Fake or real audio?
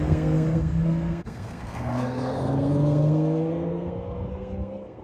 fake